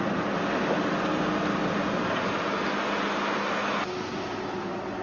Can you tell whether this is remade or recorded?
recorded